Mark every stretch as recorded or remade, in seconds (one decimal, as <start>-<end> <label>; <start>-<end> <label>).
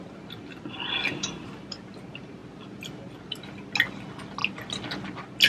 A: 0.0-5.5 recorded